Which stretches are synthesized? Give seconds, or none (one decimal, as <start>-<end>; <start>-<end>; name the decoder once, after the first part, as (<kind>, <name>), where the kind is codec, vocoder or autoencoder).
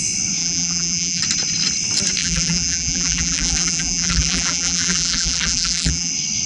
0.4-1.2 (vocoder, BigVGAN v2); 2.2-6.1